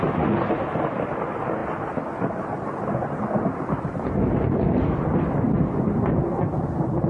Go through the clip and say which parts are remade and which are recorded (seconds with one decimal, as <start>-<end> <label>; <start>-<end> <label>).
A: 0.0-7.1 recorded